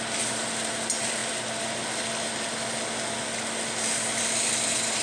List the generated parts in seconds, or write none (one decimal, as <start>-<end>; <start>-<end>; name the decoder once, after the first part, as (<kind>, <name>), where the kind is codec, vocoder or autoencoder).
none